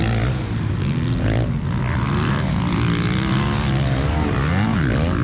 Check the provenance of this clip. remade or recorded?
recorded